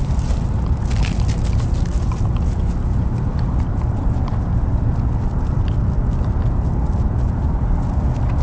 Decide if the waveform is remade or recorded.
recorded